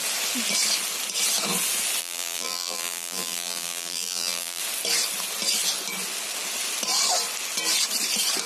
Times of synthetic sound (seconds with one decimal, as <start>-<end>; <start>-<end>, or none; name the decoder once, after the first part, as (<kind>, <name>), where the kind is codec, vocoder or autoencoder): 2.0-4.6 (vocoder, BigVGAN v2)